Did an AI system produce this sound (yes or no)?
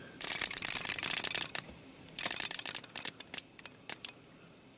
no